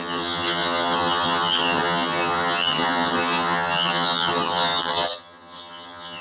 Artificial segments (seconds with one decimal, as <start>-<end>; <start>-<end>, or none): 0.0-6.2

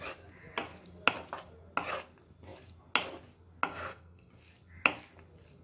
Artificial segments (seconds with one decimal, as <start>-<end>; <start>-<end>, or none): 3.7-4.3

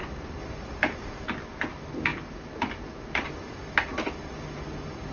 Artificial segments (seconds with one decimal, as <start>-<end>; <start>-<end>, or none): 0.0-0.9

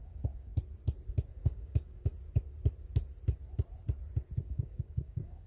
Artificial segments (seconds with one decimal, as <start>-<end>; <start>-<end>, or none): 0.0-0.5; 1.3-2.1; 4.4-5.5